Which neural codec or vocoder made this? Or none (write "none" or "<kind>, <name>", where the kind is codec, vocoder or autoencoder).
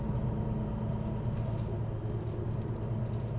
none